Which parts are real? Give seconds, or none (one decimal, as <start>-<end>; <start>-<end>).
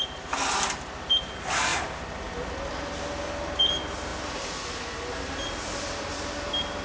0.0-6.8